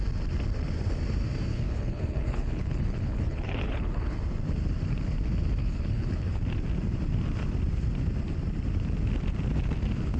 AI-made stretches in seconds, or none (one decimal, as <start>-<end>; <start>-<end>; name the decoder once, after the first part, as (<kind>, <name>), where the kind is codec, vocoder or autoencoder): 1.5-4.2 (codec, HILCodec); 5.6-6.4